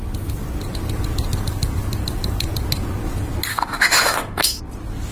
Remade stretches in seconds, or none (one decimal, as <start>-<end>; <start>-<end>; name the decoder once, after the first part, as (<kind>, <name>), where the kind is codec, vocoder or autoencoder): 3.5-4.6 (autoencoder, DAC-VAE)